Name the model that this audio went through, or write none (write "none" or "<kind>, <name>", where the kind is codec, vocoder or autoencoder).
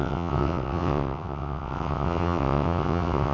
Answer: vocoder, WaveNeXt